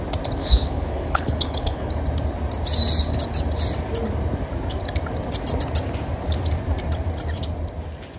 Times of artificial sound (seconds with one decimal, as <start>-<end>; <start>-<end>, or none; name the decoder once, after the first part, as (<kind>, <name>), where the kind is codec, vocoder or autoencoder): 0.4-1.9 (codec, HILCodec)